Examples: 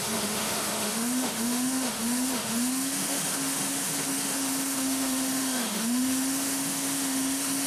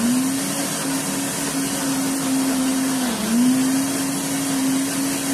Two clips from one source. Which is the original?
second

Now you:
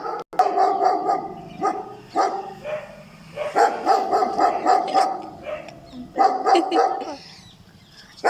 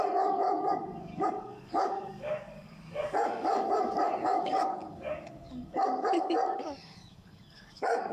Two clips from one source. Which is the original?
first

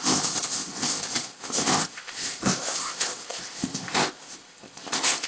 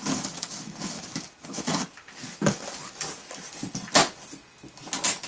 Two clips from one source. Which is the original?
second